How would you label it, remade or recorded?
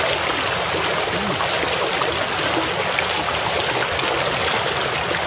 recorded